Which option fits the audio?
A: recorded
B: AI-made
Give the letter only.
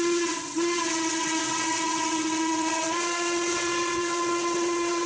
B